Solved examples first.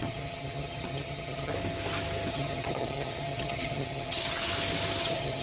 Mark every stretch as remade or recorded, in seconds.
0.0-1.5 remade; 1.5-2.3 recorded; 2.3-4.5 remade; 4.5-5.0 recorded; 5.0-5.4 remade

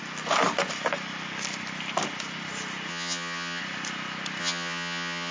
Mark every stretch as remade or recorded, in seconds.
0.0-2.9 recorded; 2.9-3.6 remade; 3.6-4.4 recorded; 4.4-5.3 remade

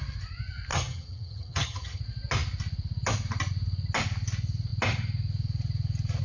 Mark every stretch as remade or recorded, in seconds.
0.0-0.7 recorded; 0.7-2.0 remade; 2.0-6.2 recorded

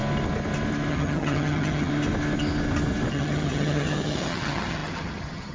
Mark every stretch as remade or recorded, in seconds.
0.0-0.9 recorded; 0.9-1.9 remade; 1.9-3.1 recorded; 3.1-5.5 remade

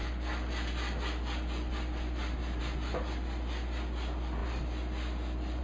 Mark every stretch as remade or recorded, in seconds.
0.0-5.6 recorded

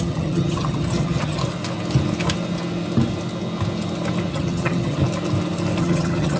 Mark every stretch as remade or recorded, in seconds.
0.0-1.4 remade; 1.4-4.3 recorded; 4.3-5.0 remade; 5.0-5.8 recorded; 5.8-6.4 remade